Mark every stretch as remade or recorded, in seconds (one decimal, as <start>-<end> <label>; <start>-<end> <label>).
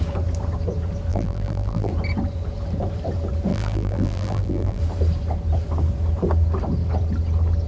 0.0-1.1 recorded; 1.1-1.9 remade; 1.9-3.5 recorded; 3.5-4.8 remade; 4.8-7.7 recorded